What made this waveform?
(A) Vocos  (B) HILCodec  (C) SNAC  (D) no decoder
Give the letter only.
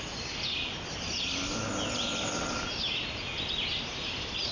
D